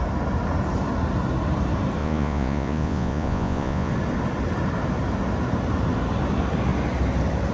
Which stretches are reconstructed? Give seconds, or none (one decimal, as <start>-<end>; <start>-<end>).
2.0-3.9